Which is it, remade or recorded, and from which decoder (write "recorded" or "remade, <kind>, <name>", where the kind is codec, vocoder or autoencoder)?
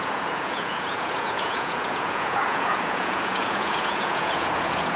remade, vocoder, Vocos